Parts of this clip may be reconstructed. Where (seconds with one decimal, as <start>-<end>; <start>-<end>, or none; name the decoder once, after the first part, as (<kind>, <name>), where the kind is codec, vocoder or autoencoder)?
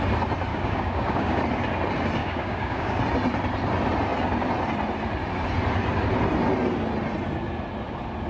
0.5-1.4 (codec, DAC); 2.2-3.0